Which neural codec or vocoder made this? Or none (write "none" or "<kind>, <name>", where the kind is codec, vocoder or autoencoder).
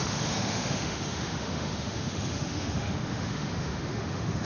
autoencoder, DAC-VAE